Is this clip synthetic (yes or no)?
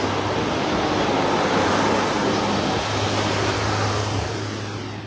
no